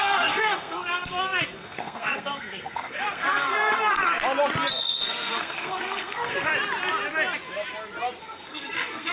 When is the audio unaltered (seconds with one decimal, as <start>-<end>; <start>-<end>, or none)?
4.1-4.7; 6.5-8.2